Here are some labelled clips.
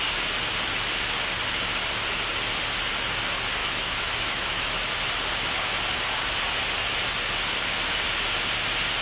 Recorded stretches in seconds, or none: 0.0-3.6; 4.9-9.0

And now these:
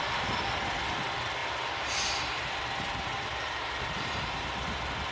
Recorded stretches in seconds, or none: 0.0-1.4; 4.5-5.1

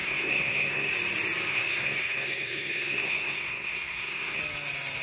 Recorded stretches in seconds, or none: 0.9-1.5; 4.4-5.0

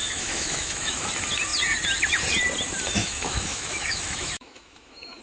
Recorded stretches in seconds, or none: 1.1-3.0

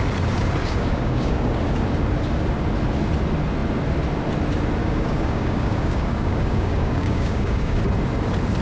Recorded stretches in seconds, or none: 0.0-0.6; 1.6-4.8; 7.8-8.6

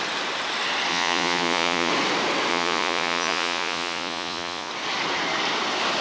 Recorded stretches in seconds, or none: 0.0-0.9; 1.9-2.5; 4.7-6.0